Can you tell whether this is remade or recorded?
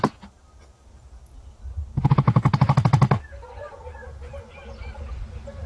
recorded